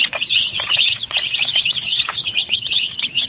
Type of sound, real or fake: fake